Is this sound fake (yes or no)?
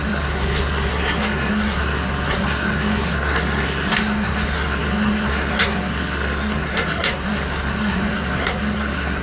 yes